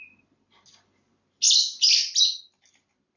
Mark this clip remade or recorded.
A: recorded